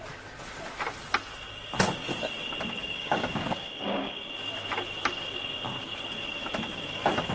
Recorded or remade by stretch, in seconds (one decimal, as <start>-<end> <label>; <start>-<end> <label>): 0.0-2.8 recorded; 2.8-4.2 remade; 4.2-7.3 recorded